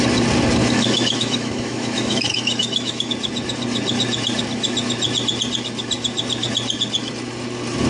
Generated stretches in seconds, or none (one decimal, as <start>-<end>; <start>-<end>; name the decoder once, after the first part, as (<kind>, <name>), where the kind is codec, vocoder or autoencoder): 0.6-3.1 (autoencoder, DAC-VAE)